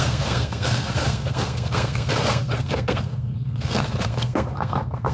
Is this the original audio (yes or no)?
no